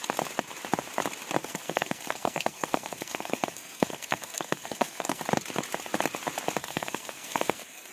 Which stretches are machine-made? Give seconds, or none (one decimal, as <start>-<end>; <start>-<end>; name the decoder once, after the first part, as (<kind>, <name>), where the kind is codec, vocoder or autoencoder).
1.4-5.2 (codec, SNAC); 6.6-7.9